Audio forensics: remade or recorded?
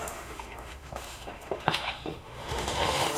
remade